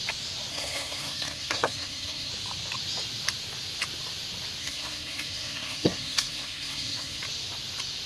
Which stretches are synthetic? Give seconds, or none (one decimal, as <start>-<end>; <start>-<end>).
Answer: 0.5-2.3; 4.6-7.2